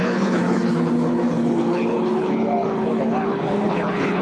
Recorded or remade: remade